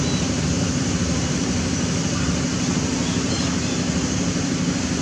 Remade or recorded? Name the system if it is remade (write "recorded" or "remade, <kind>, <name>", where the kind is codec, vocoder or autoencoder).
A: recorded